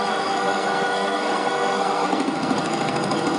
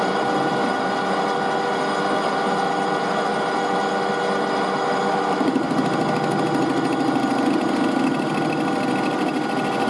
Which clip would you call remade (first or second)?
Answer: first